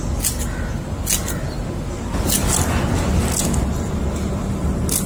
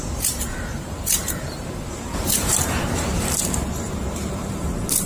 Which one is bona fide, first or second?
first